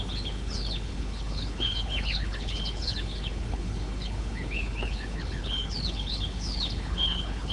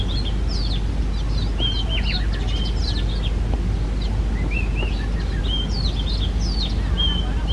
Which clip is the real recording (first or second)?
second